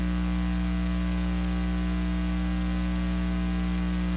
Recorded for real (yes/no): yes